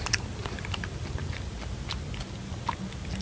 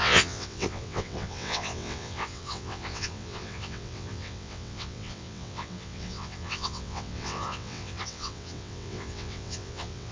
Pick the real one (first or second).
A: first